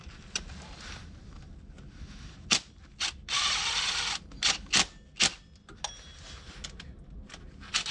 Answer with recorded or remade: recorded